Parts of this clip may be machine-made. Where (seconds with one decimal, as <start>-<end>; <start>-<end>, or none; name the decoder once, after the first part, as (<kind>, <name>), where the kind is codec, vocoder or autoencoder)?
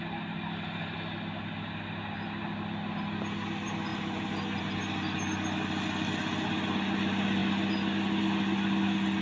none